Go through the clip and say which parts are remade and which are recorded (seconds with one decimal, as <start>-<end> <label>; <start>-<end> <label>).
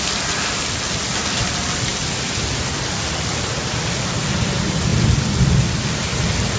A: 0.0-6.6 recorded